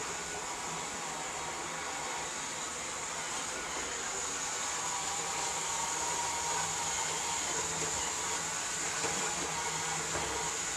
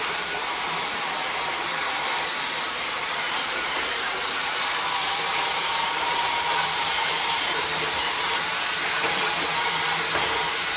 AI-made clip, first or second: second